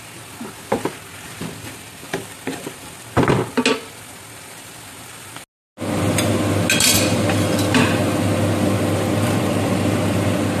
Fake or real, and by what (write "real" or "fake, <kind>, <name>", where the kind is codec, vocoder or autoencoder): real